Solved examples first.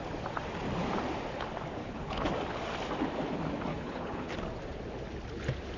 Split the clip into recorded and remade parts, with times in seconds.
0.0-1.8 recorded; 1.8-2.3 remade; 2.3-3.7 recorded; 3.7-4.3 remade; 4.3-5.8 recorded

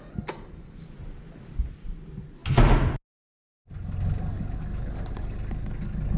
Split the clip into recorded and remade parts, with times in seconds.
0.0-6.2 recorded